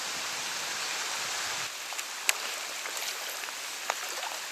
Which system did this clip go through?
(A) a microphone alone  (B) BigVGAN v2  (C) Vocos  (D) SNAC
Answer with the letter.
A